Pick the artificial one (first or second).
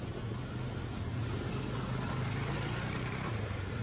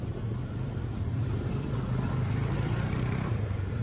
second